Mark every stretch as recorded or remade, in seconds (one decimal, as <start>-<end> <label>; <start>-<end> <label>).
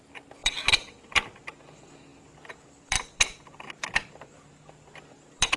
0.0-0.4 recorded; 0.4-1.6 remade; 1.6-2.1 recorded; 2.1-5.6 remade